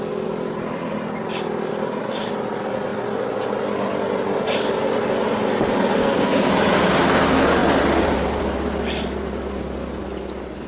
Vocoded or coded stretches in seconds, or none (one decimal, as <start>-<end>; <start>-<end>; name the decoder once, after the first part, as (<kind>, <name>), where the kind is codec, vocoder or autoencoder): 6.0-6.5 (codec, SNAC)

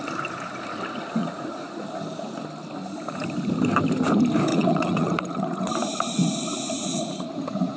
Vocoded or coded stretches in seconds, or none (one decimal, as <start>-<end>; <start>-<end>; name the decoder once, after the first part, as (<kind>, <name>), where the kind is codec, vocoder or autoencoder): 1.2-1.8 (vocoder, Vocos); 4.5-5.7; 6.2-7.8